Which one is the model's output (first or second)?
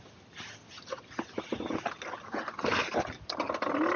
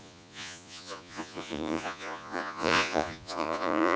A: second